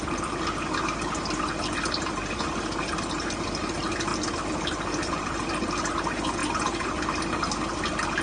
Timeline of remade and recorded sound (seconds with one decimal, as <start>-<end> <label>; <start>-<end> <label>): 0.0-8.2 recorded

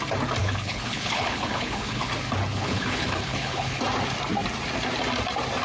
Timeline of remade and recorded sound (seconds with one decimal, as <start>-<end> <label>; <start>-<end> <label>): 0.0-0.4 recorded; 0.4-2.1 remade; 2.1-2.5 recorded; 2.5-3.8 remade; 3.8-5.6 recorded

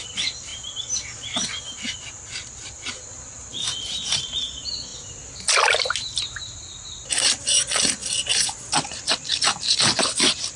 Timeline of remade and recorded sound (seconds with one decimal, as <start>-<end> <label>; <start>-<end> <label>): 0.0-10.6 recorded

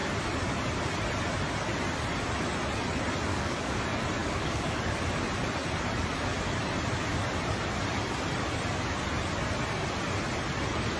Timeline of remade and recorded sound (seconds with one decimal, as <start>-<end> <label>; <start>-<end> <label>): 0.0-3.3 recorded; 3.3-3.8 remade; 3.8-4.2 recorded; 4.2-4.8 remade; 4.8-11.0 recorded